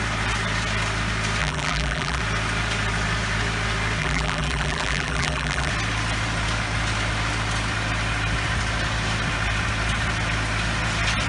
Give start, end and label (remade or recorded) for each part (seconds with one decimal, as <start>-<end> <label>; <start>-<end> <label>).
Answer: 0.0-1.4 recorded; 1.4-2.2 remade; 2.2-4.0 recorded; 4.0-5.7 remade; 5.7-11.3 recorded